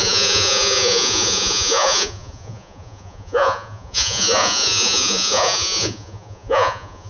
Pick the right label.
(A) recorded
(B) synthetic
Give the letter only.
B